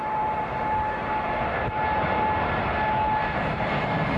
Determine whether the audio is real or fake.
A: fake